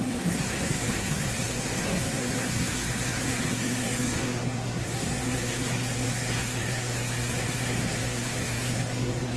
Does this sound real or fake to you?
fake